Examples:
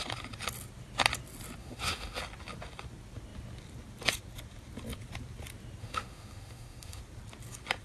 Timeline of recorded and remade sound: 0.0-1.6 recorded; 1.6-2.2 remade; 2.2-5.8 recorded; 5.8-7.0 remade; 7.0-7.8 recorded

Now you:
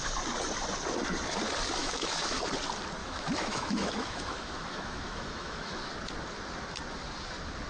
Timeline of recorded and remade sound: 0.0-1.8 recorded; 1.8-2.4 remade; 2.4-3.0 recorded; 3.0-5.8 remade; 5.8-7.7 recorded

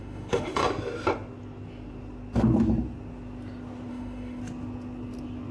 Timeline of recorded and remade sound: 0.0-0.6 remade; 0.6-3.9 recorded; 3.9-4.4 remade; 4.4-5.5 recorded

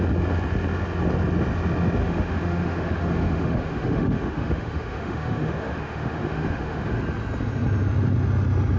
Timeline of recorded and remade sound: 0.0-2.0 recorded; 2.0-6.9 remade; 6.9-8.8 recorded

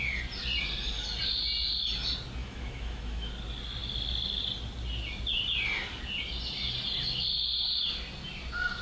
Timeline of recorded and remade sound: 0.0-2.4 recorded; 2.4-3.3 remade; 3.3-8.8 recorded

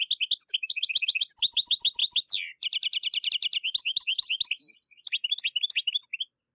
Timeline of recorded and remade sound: 0.0-6.5 recorded

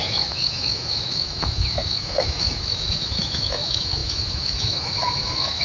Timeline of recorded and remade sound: 0.0-5.6 remade

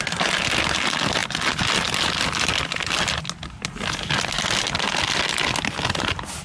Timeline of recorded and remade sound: 0.0-6.4 recorded